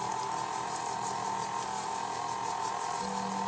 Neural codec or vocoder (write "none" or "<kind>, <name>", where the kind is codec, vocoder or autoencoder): none